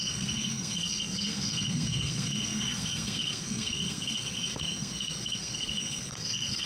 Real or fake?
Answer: fake